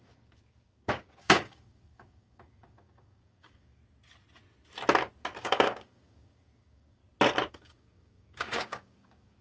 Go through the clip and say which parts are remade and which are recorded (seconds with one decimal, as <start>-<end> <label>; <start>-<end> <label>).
0.0-3.8 remade; 3.8-5.4 recorded; 5.4-7.0 remade; 7.0-7.5 recorded; 7.5-9.4 remade